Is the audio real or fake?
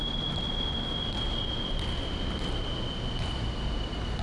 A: real